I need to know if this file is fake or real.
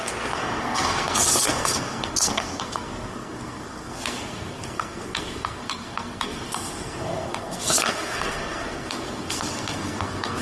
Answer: fake